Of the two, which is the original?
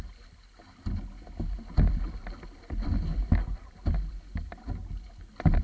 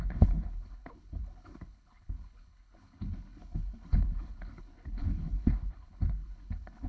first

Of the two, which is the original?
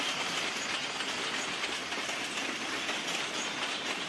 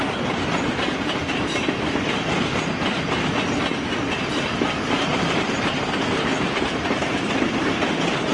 first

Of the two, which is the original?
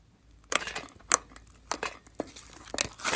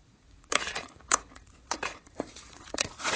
first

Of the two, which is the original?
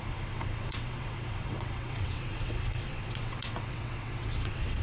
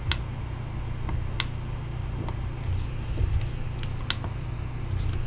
second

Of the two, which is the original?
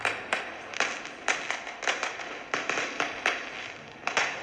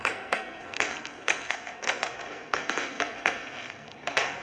first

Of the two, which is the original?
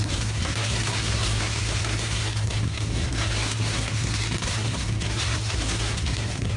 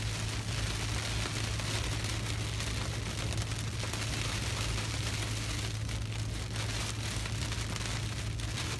second